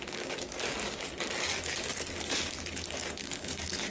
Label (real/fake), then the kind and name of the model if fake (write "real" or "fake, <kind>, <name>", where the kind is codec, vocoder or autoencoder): fake, codec, DAC